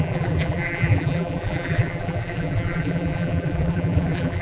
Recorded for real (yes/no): no